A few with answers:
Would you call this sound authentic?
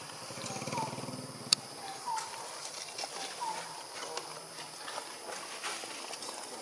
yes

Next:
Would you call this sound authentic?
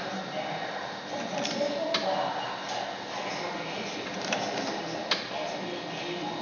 yes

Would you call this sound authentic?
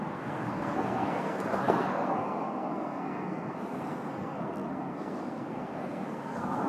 no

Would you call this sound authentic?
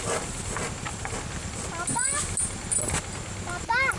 yes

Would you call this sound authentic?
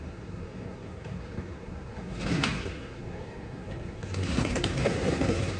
no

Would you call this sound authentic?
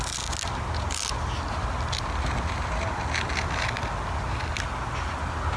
yes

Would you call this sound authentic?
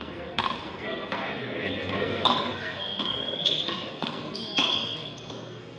no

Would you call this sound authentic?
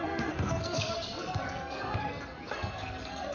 no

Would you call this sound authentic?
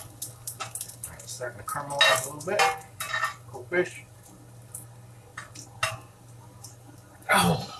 yes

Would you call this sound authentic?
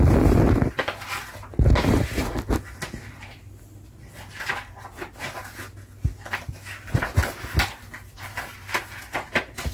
yes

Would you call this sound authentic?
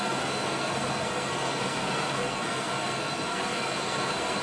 no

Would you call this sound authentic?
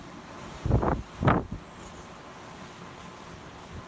yes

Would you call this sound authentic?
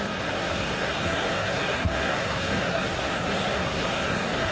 no